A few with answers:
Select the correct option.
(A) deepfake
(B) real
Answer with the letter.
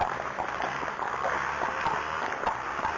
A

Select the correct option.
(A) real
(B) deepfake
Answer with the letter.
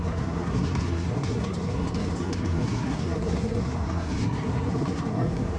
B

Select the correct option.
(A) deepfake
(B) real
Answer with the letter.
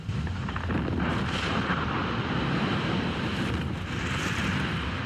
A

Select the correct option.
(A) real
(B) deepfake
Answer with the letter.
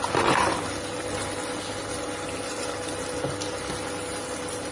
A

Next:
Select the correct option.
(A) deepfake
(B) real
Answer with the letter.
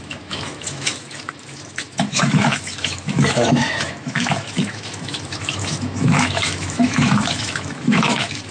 A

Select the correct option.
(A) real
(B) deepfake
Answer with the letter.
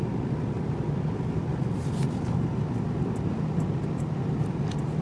A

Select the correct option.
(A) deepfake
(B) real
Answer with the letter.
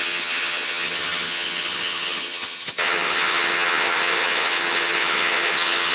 A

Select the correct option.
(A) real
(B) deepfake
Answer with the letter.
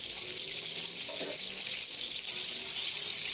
A